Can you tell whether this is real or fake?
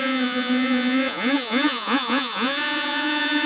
fake